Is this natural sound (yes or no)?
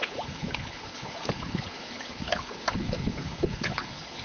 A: no